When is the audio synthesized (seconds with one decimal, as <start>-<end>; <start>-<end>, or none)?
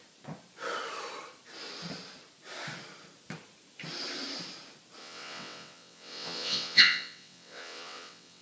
5.0-8.4